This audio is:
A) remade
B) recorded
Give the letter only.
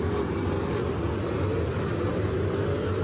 B